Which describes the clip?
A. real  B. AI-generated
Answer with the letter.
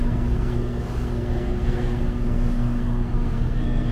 B